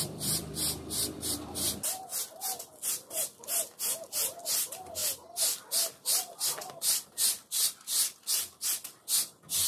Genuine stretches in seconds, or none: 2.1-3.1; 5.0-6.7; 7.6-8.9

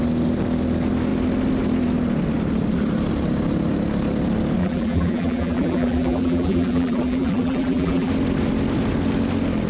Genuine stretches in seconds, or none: 0.0-4.6; 8.1-9.7

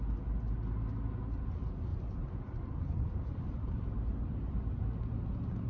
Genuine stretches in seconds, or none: 0.0-1.9; 5.3-5.7

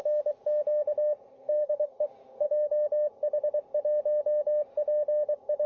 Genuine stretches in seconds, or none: 0.0-1.3; 2.7-5.7

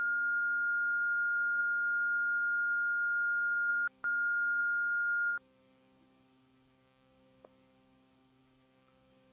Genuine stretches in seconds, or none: 1.6-3.7